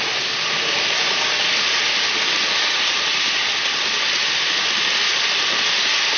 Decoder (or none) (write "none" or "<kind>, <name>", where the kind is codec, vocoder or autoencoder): none